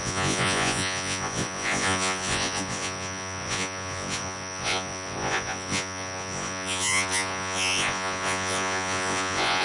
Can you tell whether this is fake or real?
fake